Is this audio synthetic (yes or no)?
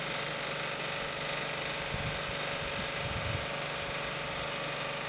no